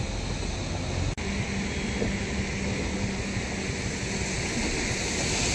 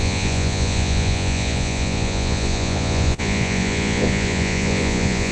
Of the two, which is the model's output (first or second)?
second